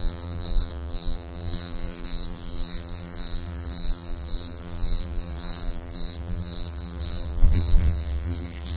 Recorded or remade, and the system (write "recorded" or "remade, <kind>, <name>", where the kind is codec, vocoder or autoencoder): remade, vocoder, BigVGAN v2